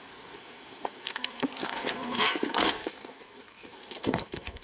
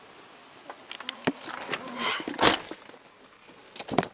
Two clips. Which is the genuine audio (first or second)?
second